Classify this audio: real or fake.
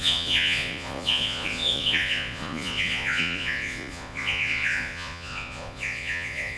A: fake